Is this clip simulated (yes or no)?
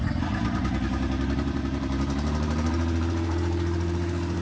yes